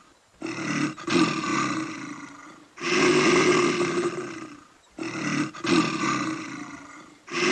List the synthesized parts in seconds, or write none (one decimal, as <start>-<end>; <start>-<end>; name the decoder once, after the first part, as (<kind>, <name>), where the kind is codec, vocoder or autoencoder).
none